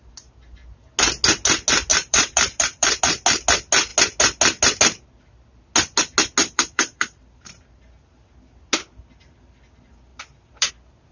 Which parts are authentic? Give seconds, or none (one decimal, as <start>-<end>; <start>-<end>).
0.0-1.9; 3.0-6.4; 7.8-10.1; 10.7-11.1